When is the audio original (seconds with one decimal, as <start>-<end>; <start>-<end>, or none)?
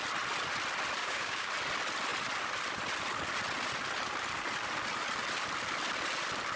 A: 0.0-1.0; 1.5-6.6